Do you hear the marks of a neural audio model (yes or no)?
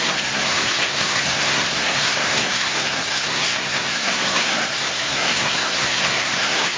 yes